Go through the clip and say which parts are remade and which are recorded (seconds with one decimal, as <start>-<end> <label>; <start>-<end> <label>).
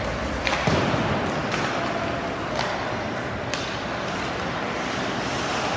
0.0-5.8 recorded